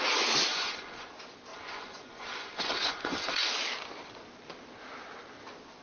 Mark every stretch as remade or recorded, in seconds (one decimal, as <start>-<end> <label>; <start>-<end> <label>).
0.0-0.5 recorded; 0.5-1.1 remade; 1.1-1.5 recorded; 1.5-3.5 remade; 3.5-5.8 recorded

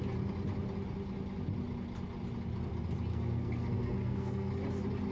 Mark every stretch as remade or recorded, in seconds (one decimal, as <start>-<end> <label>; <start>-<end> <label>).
0.0-3.1 recorded; 3.1-4.5 remade; 4.5-5.1 recorded

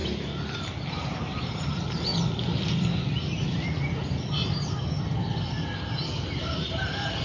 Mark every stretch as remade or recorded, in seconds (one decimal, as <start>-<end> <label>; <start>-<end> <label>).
0.0-1.4 recorded; 1.4-2.1 remade; 2.1-6.4 recorded; 6.4-7.2 remade

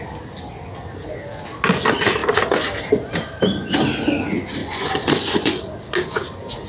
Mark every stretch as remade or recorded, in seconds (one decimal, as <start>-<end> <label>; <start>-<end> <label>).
0.0-4.6 recorded; 4.6-5.6 remade; 5.6-6.7 recorded

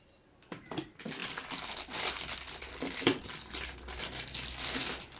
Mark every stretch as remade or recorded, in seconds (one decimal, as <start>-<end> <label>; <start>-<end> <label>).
0.0-5.2 recorded